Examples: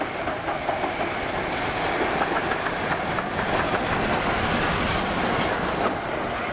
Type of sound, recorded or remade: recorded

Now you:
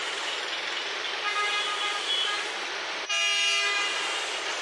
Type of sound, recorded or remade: recorded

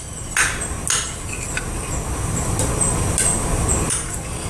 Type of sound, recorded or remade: recorded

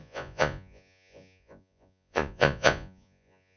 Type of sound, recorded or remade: remade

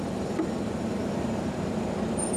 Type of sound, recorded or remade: recorded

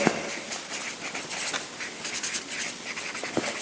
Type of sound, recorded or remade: recorded